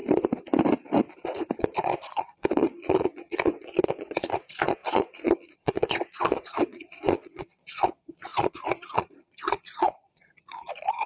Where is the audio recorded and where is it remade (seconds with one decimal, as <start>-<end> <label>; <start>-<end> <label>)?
0.0-1.6 recorded; 1.6-11.1 remade